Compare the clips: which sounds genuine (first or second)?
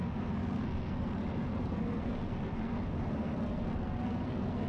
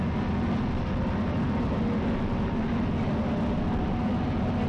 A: second